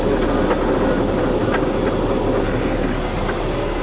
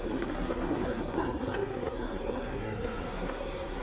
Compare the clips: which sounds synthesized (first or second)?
second